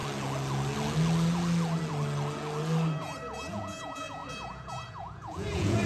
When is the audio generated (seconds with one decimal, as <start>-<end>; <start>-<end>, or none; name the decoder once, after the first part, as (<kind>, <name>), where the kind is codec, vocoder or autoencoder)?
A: 3.5-5.9 (vocoder, Vocos)